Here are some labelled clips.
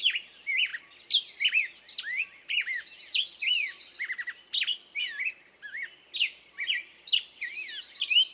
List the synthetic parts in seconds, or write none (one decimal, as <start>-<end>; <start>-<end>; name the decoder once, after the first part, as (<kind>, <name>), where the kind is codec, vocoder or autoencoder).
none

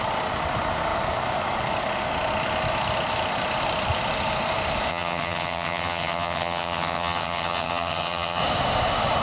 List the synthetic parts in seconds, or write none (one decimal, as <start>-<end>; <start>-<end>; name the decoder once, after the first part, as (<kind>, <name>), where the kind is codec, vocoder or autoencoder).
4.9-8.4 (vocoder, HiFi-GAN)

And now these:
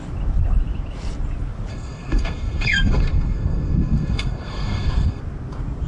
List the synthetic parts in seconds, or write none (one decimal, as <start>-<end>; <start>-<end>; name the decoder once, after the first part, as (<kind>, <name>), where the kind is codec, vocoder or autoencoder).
1.7-5.2 (codec, SNAC)

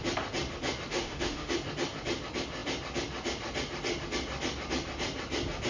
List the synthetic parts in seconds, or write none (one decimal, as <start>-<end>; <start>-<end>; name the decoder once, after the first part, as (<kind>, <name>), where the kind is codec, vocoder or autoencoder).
0.9-1.5 (autoencoder, DAC-VAE)

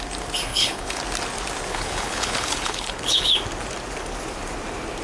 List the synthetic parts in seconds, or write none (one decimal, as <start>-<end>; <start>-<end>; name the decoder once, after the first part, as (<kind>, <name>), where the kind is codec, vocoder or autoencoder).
0.5-1.0 (codec, HILCodec); 1.7-3.3

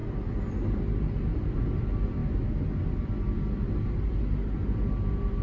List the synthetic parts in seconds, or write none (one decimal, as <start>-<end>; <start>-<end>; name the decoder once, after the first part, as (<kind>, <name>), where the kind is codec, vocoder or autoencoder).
none

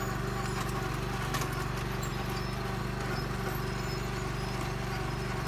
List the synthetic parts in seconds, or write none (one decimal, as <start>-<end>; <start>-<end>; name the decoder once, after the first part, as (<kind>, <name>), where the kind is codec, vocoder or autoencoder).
none

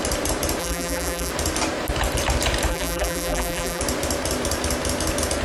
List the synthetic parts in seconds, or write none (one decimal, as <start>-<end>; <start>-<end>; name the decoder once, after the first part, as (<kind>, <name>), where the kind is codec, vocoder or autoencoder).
0.6-1.3 (vocoder, BigVGAN v2); 2.7-3.8